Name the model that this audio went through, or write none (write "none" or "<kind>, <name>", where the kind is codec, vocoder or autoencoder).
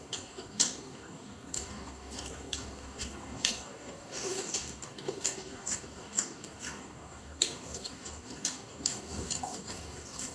codec, DAC